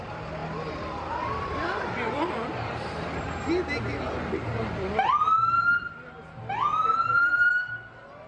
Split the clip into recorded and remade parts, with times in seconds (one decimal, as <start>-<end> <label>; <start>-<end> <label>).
0.0-0.4 recorded; 0.4-3.5 remade; 3.5-6.9 recorded; 6.9-7.5 remade; 7.5-8.3 recorded